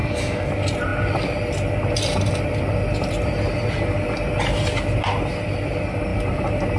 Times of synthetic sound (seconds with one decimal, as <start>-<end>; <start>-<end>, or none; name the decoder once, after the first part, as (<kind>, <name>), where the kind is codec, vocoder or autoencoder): 0.0-0.5 (codec, DAC)